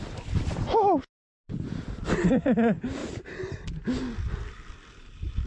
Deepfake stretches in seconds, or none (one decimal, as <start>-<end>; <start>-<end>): none